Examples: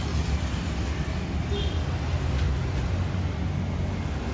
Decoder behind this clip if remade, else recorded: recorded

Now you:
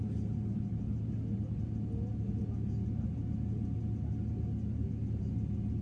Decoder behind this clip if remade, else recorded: recorded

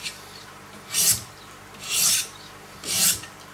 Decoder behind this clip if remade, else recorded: remade, vocoder, BigVGAN v2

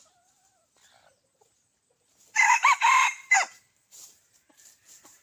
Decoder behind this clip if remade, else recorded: remade, vocoder, BigVGAN v2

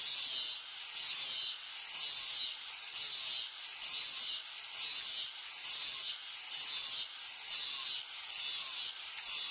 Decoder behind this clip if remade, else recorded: recorded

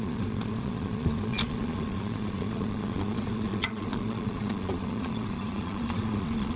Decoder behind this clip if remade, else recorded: remade, vocoder, Vocos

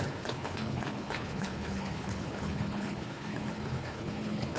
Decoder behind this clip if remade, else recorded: remade, codec, HILCodec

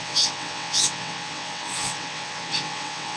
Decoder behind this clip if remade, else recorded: remade, vocoder, WaveNeXt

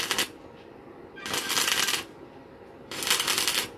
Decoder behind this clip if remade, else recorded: recorded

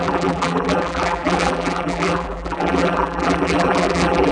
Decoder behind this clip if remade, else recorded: remade, vocoder, BigVGAN v2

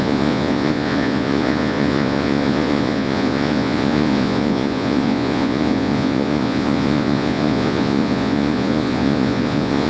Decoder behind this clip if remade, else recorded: remade, vocoder, Vocos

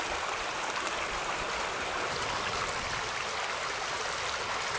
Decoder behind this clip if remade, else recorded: recorded